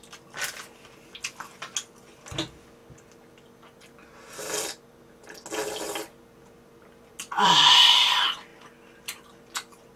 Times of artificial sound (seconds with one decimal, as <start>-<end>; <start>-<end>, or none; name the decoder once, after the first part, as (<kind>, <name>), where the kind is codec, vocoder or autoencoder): none